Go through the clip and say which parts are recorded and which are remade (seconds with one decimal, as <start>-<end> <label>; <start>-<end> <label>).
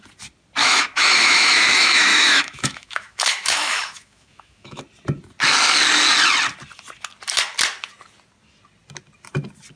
0.0-0.6 recorded; 0.6-4.8 remade; 4.8-9.8 recorded